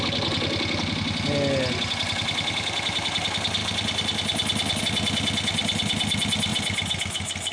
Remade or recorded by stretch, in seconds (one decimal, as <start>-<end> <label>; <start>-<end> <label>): 0.0-7.5 recorded

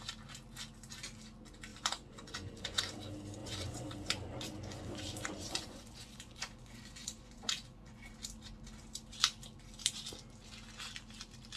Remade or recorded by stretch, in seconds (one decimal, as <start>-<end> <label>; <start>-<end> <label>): 0.0-1.7 recorded; 1.7-2.8 remade; 2.8-3.4 recorded; 3.4-8.1 remade; 8.1-11.6 recorded

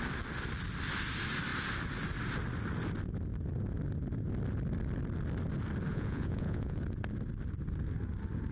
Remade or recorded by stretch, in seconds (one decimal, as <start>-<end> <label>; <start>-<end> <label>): 0.0-5.9 recorded; 5.9-6.8 remade; 6.8-8.5 recorded

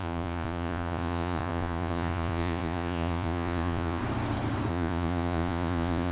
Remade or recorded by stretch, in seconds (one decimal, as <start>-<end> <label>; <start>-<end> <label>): 0.0-4.0 remade; 4.0-4.7 recorded; 4.7-6.1 remade

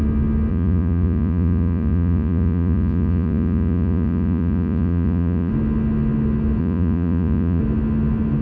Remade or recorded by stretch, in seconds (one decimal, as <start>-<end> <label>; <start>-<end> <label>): 0.0-0.5 recorded; 0.5-5.5 remade; 5.5-6.6 recorded; 6.6-7.6 remade; 7.6-8.4 recorded

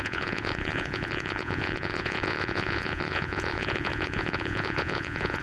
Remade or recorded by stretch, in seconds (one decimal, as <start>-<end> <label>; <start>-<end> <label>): 0.0-5.4 remade

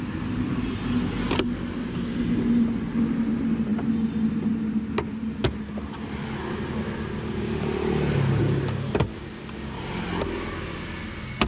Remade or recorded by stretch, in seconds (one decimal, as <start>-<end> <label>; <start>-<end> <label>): 0.0-11.5 recorded